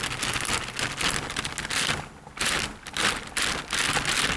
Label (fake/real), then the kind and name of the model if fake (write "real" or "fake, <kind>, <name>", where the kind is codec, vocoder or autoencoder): real